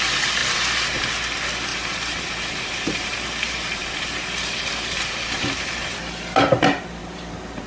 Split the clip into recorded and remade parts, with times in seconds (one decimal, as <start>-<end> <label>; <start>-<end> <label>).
0.0-0.4 recorded; 0.4-1.1 remade; 1.1-1.7 recorded; 1.7-5.7 remade; 5.7-7.0 recorded; 7.0-7.7 remade